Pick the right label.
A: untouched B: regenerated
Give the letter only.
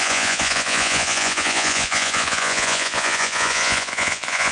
B